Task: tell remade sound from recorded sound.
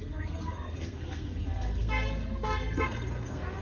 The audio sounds remade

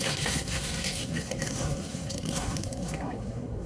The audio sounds remade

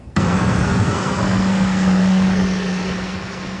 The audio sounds remade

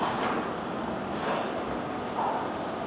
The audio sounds recorded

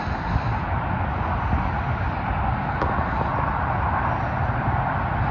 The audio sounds recorded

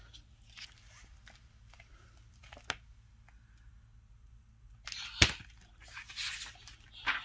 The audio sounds recorded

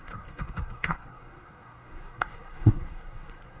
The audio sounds remade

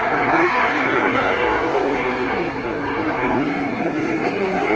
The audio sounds remade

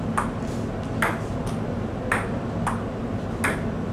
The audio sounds recorded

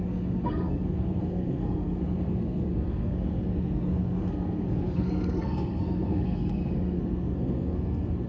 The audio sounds remade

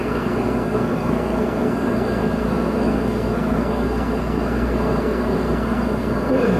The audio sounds remade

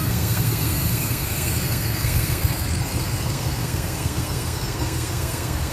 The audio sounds remade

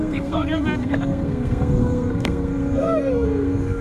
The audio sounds remade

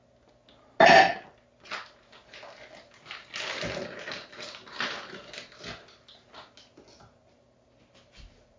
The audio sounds recorded